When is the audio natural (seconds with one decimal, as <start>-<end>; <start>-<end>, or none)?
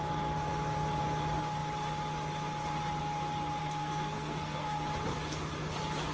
0.0-3.6; 4.8-6.1